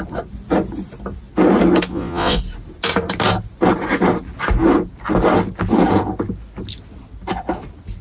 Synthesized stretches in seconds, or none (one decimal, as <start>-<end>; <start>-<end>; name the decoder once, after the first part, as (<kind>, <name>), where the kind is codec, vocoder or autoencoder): 1.9-2.4 (vocoder, Vocos)